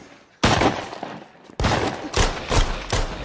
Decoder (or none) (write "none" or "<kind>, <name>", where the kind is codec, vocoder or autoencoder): none